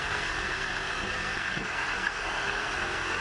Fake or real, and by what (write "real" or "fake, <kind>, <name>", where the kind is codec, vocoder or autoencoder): fake, codec, SNAC